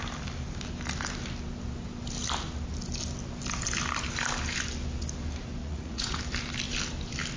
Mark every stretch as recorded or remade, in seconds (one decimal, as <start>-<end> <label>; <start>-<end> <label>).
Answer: 0.0-5.6 recorded; 5.6-6.2 remade; 6.2-7.4 recorded